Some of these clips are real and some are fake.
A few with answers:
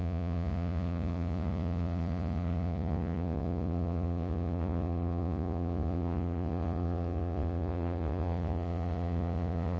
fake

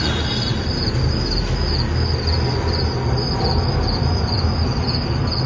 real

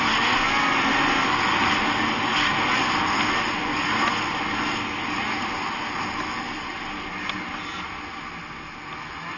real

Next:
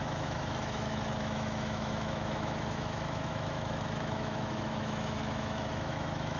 fake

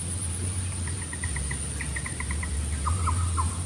fake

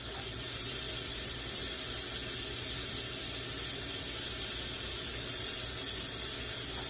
real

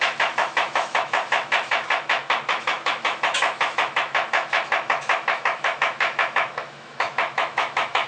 fake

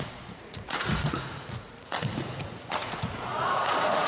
fake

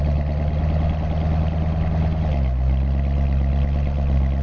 real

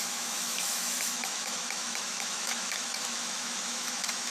fake